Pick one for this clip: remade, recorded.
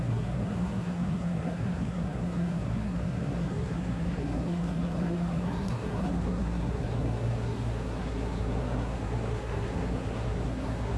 remade